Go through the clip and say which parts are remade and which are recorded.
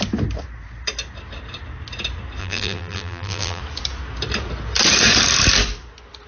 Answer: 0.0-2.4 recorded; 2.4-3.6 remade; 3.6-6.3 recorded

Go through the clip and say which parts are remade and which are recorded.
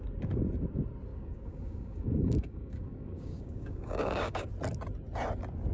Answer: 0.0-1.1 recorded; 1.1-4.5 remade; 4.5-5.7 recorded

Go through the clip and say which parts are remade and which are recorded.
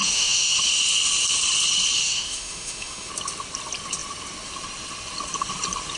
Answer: 0.0-0.6 remade; 0.6-2.0 recorded; 2.0-3.1 remade; 3.1-6.0 recorded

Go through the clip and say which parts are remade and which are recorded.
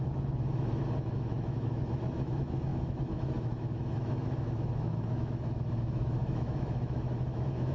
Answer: 0.0-7.7 remade